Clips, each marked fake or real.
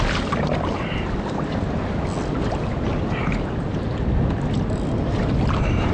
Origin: real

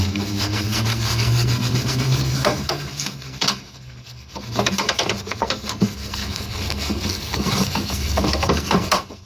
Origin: fake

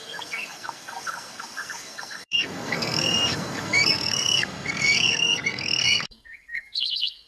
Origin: fake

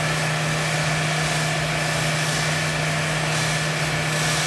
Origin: real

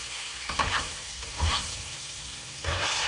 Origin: fake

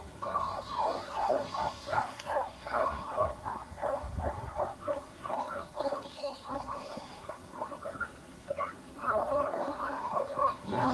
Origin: fake